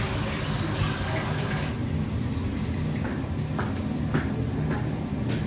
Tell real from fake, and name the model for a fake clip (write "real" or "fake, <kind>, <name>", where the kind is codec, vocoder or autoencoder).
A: real